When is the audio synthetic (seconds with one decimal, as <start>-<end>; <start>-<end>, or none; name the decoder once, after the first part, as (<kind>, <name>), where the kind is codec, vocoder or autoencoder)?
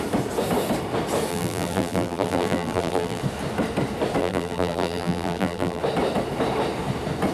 1.3-3.2 (vocoder, BigVGAN v2); 4.2-5.8